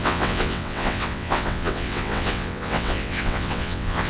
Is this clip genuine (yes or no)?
no